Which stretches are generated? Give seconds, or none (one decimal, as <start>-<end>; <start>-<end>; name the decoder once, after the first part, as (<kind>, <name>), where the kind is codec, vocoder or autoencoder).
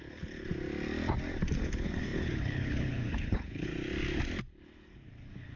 0.0-0.5 (codec, HILCodec); 1.6-3.7; 4.4-5.6